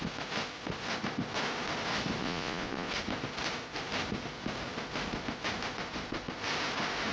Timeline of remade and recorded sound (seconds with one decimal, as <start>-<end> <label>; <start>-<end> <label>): 0.0-2.2 recorded; 2.2-2.9 remade; 2.9-7.1 recorded